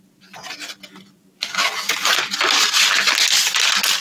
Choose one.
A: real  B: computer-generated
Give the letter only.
A